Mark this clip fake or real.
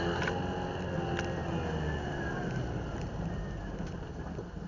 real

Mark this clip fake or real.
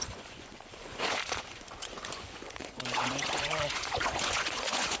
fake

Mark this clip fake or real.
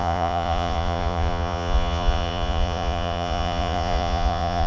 fake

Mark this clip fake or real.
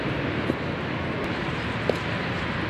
real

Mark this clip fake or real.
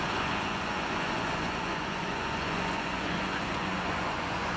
fake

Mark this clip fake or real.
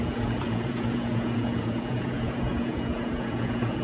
fake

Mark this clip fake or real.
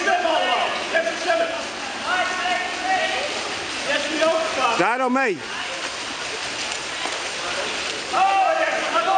real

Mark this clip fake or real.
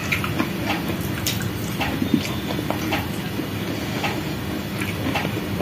real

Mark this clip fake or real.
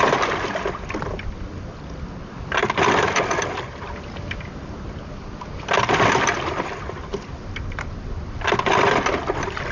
real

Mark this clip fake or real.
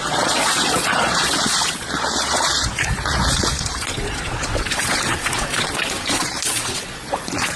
fake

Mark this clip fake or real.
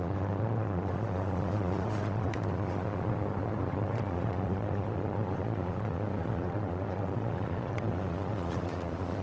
fake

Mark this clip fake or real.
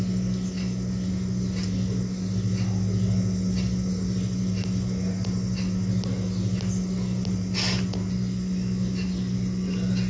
real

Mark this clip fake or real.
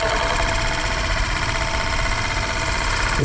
real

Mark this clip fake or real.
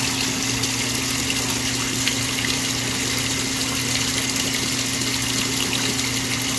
real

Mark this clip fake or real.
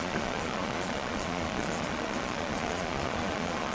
fake